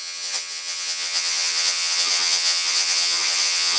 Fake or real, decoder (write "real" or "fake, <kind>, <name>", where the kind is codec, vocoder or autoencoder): fake, vocoder, HiFi-GAN